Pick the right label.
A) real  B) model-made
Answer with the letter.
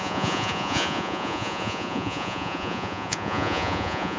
B